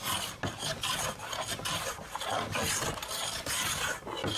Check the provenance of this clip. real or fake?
real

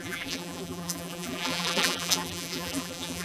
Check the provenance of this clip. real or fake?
fake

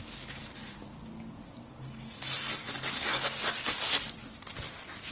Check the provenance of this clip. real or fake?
real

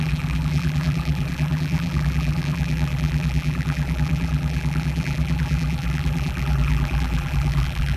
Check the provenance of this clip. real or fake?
fake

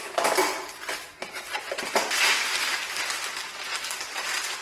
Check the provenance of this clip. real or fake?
real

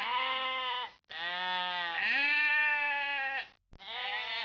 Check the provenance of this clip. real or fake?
real